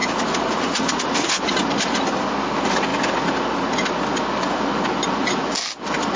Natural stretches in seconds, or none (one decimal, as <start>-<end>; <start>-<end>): 1.3-6.2